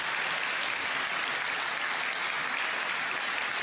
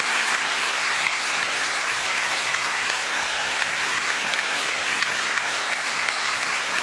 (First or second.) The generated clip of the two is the second